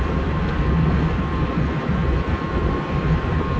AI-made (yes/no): no